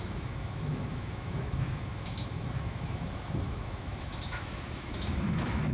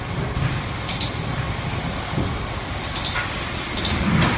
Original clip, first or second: second